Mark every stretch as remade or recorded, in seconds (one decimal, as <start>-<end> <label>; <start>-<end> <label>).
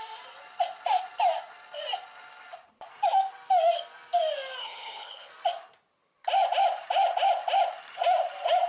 0.0-4.6 recorded; 4.6-5.3 remade; 5.3-8.7 recorded